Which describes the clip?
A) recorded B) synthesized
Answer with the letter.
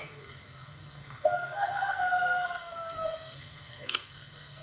B